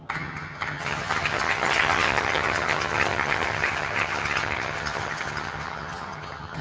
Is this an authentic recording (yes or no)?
no